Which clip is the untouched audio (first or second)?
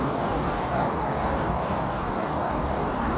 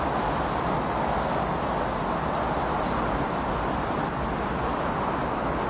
second